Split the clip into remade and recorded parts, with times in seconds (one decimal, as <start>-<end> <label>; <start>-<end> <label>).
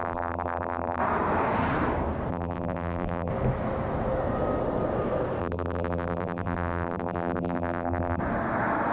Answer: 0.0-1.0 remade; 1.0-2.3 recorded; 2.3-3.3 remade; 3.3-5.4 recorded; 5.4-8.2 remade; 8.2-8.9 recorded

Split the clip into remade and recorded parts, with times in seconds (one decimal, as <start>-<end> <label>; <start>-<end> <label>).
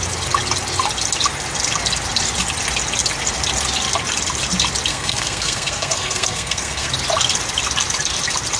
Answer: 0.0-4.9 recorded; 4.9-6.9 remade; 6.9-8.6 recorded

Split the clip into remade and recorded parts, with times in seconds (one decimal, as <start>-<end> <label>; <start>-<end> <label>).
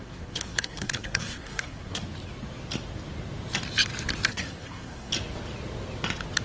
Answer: 0.0-2.0 remade; 2.0-4.3 recorded; 4.3-5.1 remade; 5.1-6.4 recorded